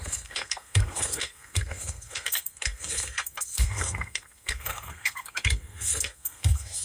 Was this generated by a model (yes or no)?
yes